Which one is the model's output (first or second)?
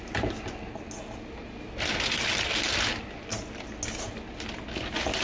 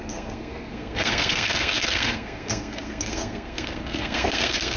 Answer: second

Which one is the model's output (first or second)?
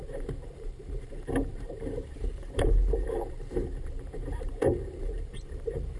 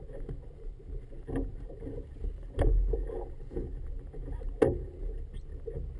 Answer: first